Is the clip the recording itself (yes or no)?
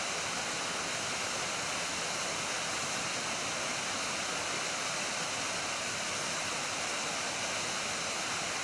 yes